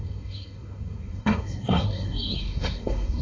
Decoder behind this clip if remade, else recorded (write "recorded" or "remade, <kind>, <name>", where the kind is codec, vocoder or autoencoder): remade, codec, SNAC